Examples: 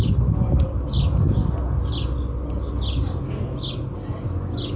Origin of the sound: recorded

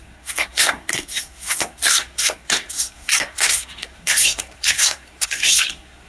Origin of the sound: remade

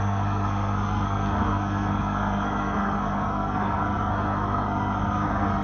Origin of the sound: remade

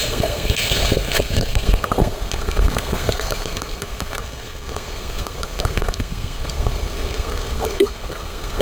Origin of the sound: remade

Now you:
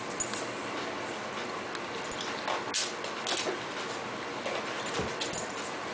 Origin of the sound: recorded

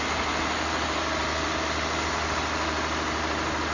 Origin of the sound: recorded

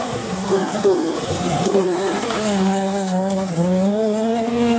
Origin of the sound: remade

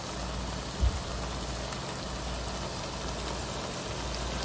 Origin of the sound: recorded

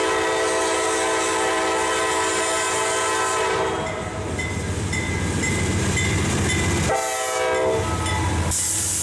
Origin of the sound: recorded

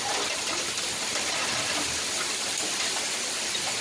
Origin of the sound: recorded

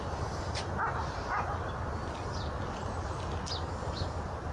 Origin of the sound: recorded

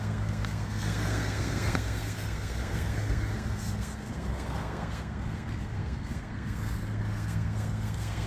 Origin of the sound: remade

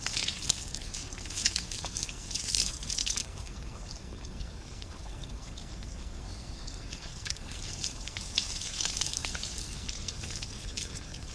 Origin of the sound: remade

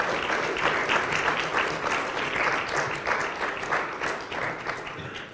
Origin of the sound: recorded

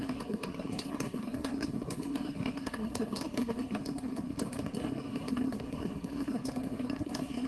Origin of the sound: remade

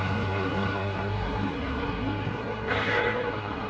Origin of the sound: remade